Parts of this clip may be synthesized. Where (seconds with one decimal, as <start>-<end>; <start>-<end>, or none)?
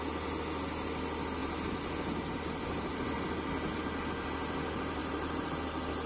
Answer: 1.4-3.0; 5.0-5.5